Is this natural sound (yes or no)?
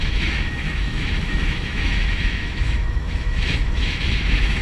no